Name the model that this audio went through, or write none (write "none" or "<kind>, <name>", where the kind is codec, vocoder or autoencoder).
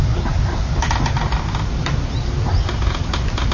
none